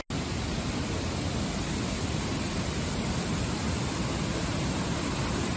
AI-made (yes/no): no